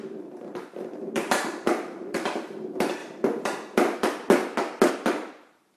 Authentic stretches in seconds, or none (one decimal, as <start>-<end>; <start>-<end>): 3.0-4.9